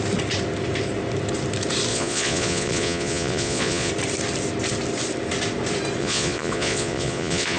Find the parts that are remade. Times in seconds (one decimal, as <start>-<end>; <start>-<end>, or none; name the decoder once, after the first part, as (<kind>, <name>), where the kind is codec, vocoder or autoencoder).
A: 1.9-3.9 (vocoder, Vocos); 6.0-7.6